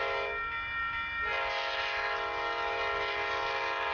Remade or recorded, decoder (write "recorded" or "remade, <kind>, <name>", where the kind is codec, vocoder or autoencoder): recorded